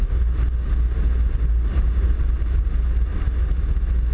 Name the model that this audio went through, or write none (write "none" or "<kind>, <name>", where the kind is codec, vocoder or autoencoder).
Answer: none